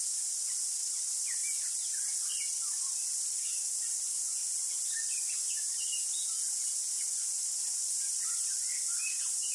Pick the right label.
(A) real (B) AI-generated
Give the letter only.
A